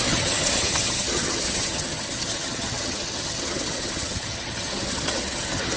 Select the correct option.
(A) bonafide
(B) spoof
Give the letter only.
B